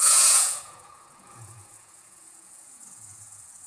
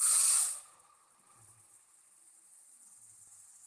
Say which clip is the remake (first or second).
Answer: first